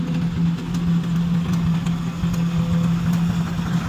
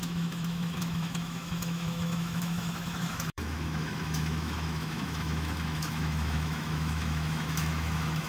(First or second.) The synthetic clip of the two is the second